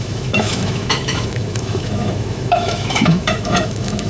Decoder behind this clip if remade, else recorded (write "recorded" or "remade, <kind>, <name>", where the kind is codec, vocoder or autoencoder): remade, autoencoder, DAC-VAE